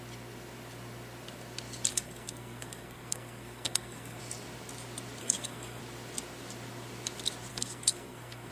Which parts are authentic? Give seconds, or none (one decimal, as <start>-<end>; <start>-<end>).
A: 0.0-1.9; 4.2-5.2; 5.8-7.5